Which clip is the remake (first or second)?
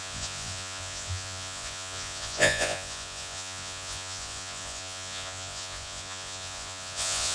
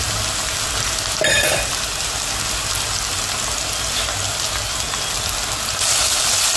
first